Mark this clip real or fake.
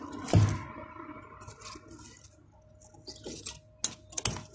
real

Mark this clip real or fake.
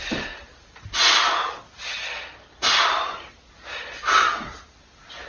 real